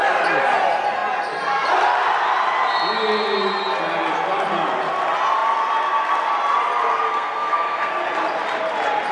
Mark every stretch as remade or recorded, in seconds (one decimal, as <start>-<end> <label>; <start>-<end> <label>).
0.0-7.1 recorded; 7.1-7.9 remade; 7.9-9.1 recorded